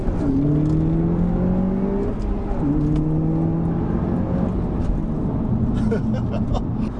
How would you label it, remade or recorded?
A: recorded